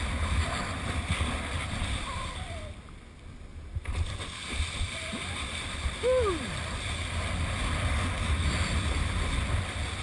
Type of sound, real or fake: real